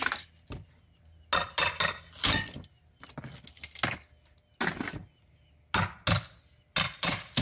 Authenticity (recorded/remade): recorded